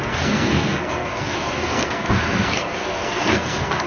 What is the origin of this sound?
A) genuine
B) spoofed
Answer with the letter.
B